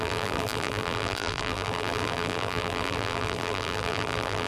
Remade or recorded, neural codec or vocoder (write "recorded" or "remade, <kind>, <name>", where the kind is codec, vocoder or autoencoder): remade, vocoder, BigVGAN v2